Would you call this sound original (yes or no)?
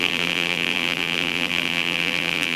no